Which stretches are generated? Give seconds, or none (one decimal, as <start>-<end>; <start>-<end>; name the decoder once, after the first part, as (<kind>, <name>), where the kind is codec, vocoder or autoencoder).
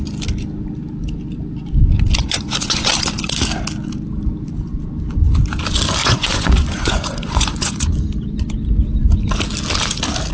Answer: 2.2-2.9 (vocoder, Vocos); 6.0-8.0